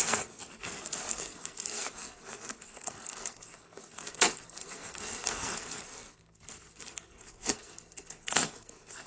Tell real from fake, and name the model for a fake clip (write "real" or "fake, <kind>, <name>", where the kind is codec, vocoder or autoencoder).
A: fake, codec, SNAC